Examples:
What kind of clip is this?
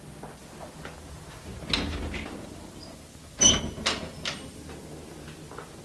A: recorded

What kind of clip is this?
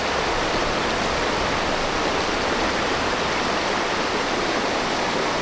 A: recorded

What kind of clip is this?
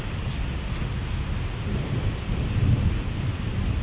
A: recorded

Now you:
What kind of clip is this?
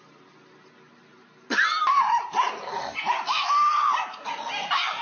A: recorded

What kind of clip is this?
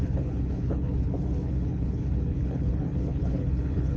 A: remade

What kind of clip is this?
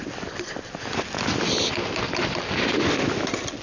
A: recorded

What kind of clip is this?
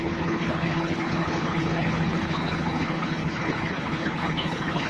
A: remade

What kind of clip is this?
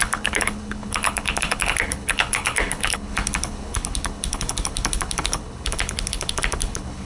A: remade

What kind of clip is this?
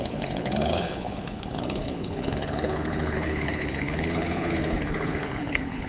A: remade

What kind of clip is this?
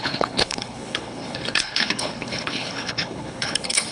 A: remade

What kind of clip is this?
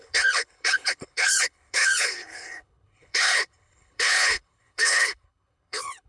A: remade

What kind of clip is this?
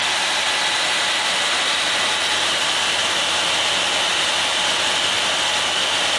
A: recorded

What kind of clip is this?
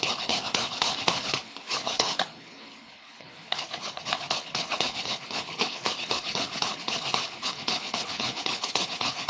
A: remade